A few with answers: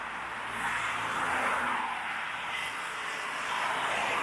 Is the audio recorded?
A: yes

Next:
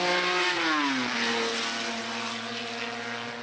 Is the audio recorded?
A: yes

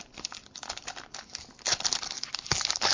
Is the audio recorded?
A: yes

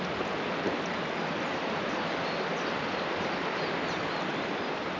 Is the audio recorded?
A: yes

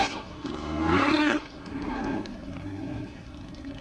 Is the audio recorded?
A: no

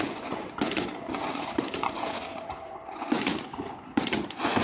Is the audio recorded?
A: no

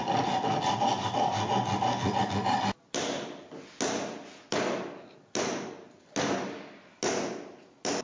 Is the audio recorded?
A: yes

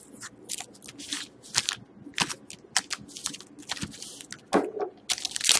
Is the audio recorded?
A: yes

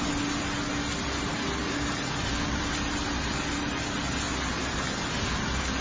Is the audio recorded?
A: yes